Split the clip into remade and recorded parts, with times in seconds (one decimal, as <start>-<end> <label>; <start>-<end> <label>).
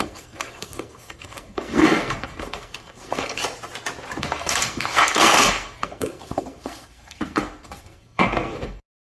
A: 0.0-3.4 remade; 3.4-4.2 recorded; 4.2-9.2 remade